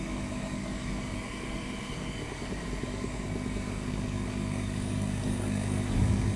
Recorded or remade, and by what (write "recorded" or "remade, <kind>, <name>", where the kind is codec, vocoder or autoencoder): remade, codec, DAC